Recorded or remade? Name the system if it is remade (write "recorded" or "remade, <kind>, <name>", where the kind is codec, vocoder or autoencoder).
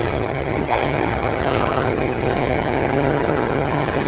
remade, vocoder, HiFi-GAN